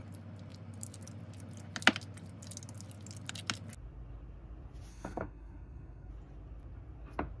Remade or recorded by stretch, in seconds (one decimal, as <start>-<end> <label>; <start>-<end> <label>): 0.0-4.9 recorded; 4.9-6.1 remade; 6.1-7.4 recorded